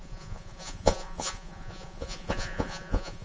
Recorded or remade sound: remade